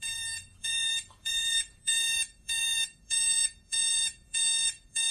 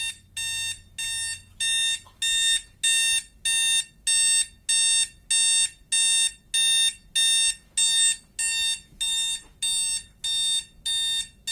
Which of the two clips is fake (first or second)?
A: first